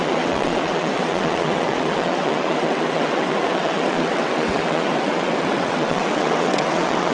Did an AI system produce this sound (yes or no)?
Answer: yes